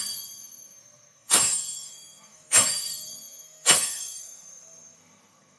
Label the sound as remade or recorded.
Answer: remade